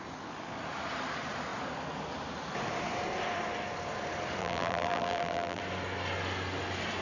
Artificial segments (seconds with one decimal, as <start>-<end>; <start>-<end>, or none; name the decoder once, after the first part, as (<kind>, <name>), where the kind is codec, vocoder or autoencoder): 4.4-5.6 (vocoder, BigVGAN v2)